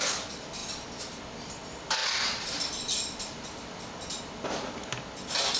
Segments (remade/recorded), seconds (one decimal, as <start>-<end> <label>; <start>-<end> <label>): 0.0-0.6 recorded; 0.6-1.2 remade; 1.2-2.0 recorded; 2.0-3.9 remade; 3.9-5.6 recorded